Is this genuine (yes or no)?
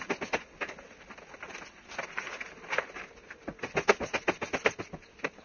yes